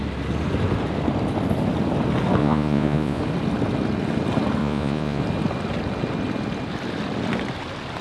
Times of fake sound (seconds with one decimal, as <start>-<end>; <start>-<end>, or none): 2.4-3.2; 4.6-5.2